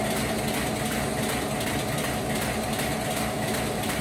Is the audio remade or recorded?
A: recorded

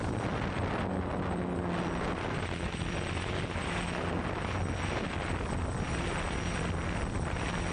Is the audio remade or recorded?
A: recorded